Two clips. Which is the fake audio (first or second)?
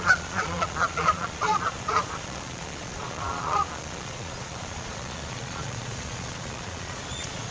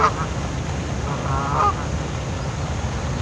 first